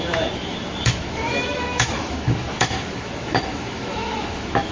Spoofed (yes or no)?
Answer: yes